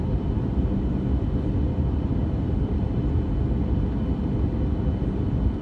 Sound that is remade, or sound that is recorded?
recorded